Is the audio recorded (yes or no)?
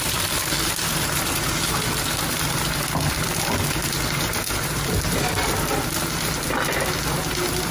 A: yes